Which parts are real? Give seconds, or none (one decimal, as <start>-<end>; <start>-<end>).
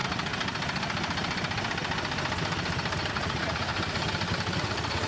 0.0-3.1; 3.7-4.6